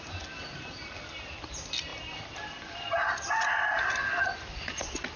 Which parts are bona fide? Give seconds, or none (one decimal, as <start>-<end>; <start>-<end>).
0.0-5.2